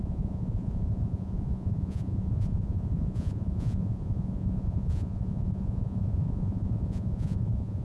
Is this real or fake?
fake